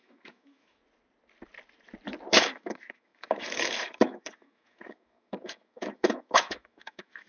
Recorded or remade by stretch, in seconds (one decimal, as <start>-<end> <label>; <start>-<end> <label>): 0.0-0.8 remade; 0.8-2.3 recorded; 2.3-7.3 remade